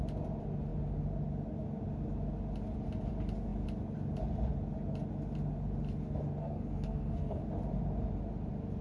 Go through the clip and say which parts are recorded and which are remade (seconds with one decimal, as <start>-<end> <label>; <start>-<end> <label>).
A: 0.0-6.4 recorded; 6.4-7.4 remade; 7.4-8.8 recorded